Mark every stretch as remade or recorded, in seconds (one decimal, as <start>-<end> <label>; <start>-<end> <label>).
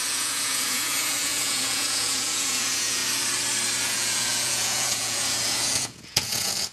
0.0-3.0 remade; 3.0-3.8 recorded; 3.8-6.7 remade